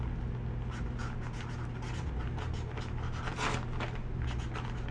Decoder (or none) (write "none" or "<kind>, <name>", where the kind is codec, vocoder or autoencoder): none